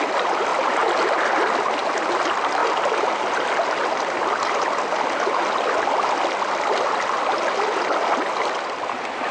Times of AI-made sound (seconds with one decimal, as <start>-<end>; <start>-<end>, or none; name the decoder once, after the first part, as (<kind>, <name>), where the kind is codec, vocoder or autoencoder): none